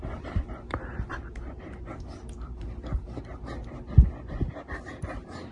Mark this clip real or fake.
fake